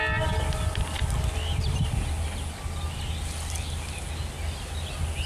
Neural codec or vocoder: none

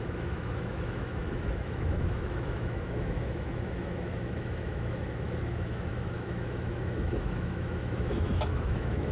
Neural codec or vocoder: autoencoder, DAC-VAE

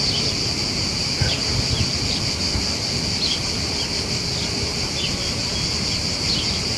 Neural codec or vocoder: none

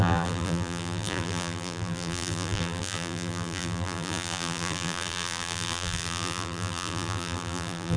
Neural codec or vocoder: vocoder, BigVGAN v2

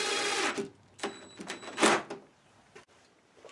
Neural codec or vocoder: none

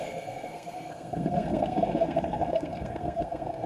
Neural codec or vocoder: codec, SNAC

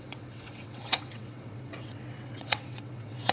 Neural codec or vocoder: vocoder, WaveNeXt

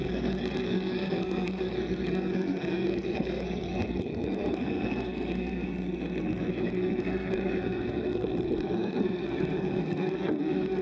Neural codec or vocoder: codec, SNAC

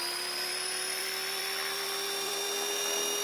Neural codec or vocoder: vocoder, BigVGAN v2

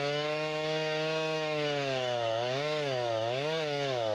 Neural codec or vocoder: codec, DAC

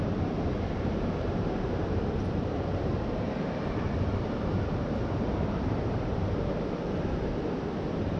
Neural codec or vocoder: vocoder, BigVGAN v2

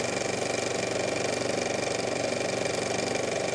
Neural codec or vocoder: none